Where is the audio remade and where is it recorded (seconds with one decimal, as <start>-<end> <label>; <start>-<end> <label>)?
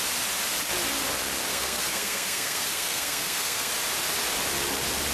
0.0-1.5 recorded; 1.5-3.7 remade; 3.7-5.1 recorded